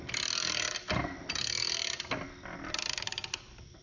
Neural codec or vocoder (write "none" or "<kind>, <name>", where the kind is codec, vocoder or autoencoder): none